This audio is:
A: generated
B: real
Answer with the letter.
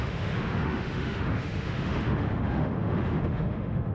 A